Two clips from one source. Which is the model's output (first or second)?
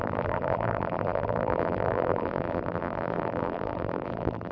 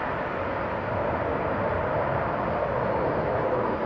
first